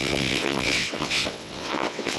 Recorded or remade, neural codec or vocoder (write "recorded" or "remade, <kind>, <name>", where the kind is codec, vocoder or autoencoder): remade, vocoder, WaveNeXt